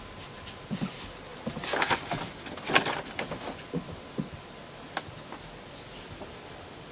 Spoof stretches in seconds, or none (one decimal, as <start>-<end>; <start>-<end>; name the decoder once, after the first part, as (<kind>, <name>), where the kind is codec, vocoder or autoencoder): none